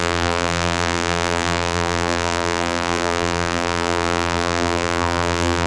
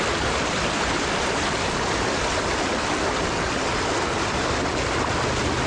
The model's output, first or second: first